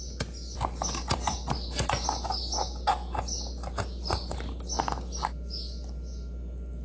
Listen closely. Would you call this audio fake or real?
real